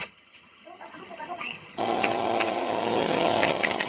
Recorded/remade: remade